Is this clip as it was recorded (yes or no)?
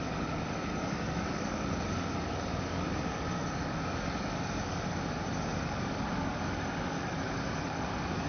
no